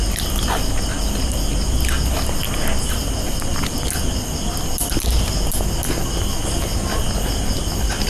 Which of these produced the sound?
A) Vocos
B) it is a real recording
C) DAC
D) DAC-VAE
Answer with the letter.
B